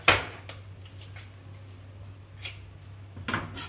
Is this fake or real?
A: real